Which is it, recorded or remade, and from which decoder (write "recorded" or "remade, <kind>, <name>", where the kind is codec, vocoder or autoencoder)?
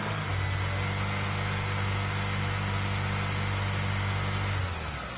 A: recorded